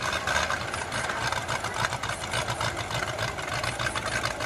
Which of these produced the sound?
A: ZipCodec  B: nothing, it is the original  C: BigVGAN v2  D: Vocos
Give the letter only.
B